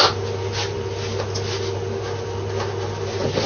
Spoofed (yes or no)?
no